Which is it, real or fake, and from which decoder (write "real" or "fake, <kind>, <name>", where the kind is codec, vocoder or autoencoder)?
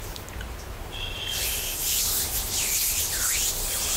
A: real